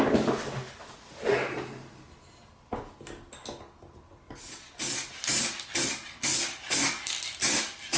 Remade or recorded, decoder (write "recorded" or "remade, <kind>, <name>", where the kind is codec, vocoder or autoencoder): recorded